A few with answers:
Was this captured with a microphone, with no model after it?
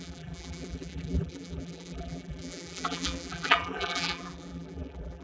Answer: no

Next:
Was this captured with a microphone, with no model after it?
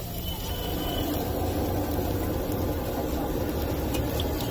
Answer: yes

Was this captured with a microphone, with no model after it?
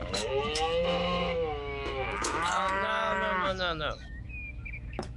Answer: no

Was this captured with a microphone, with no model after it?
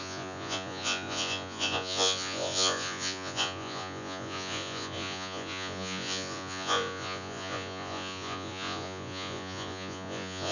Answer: no